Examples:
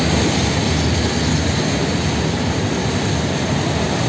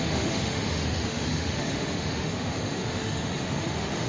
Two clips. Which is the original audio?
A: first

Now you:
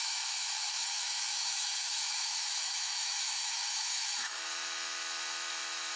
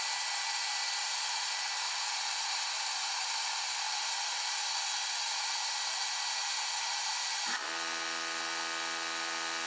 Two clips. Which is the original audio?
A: second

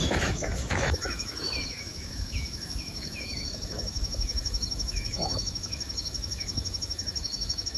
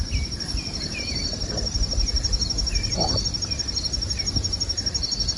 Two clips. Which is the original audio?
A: second